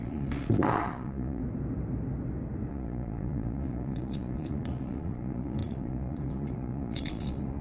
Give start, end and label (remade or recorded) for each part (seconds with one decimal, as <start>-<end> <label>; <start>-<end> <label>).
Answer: 0.0-1.4 remade; 1.4-2.7 recorded; 2.7-7.6 remade